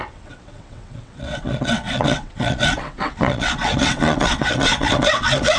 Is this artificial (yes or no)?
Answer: yes